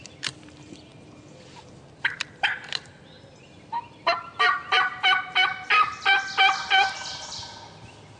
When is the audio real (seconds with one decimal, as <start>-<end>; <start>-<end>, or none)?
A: none